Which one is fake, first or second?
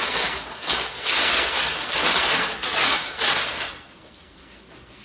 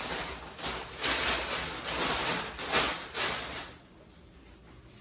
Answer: first